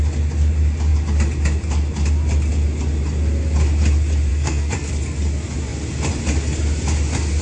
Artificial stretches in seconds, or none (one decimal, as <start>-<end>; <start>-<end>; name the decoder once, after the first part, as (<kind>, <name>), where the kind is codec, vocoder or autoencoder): 4.3-4.9 (codec, SNAC)